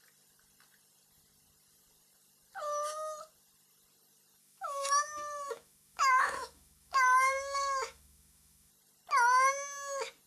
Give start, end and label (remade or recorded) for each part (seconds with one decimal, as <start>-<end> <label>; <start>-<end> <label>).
0.0-4.4 recorded; 4.4-8.7 remade; 8.7-10.3 recorded